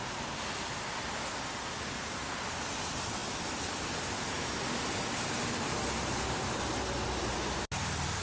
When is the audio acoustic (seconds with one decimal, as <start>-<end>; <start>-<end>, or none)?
0.0-8.2